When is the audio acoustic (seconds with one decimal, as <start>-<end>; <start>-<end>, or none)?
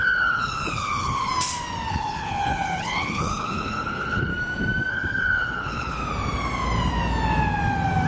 1.3-1.9; 4.3-4.9; 6.0-8.1